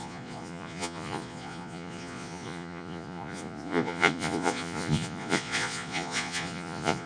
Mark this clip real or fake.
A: fake